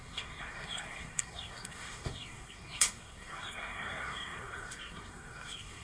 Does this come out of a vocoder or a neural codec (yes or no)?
yes